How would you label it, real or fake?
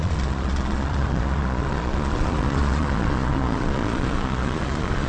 fake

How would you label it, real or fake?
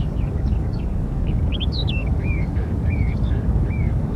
fake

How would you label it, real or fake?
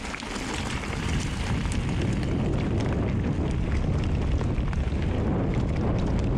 real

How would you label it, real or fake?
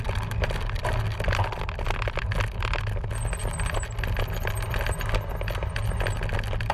real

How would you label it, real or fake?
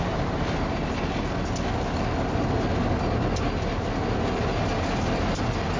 real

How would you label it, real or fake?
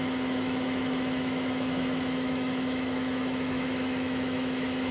fake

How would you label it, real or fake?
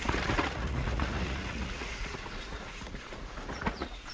fake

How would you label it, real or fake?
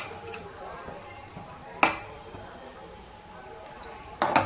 real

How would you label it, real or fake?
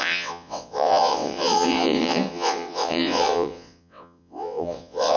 fake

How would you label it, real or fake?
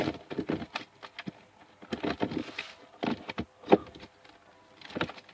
real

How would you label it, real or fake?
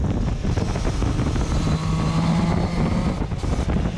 real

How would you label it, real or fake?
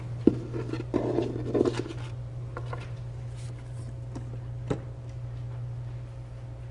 fake